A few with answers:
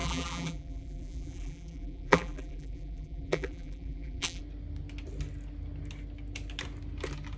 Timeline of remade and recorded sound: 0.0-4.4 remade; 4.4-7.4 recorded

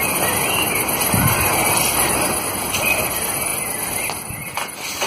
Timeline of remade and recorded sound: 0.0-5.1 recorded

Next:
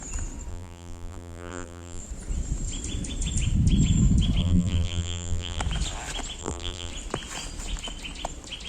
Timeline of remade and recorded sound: 0.0-0.5 recorded; 0.5-2.0 remade; 2.0-4.4 recorded; 4.4-5.6 remade; 5.6-6.4 recorded; 6.4-6.9 remade; 6.9-8.7 recorded

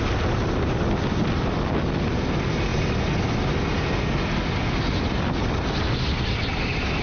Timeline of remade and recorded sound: 0.0-7.0 recorded

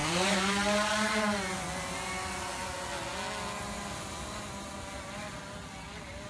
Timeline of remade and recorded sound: 0.0-1.1 remade; 1.1-6.3 recorded

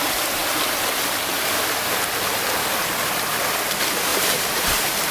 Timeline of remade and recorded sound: 0.0-4.1 recorded; 4.1-5.1 remade

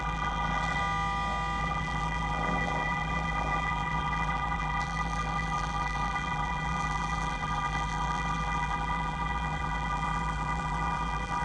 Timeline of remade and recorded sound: 0.0-0.8 remade; 0.8-1.6 recorded; 1.6-11.4 remade

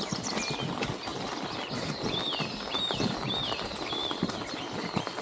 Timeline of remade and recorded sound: 0.0-1.1 remade; 1.1-2.7 recorded; 2.7-4.0 remade; 4.0-5.2 recorded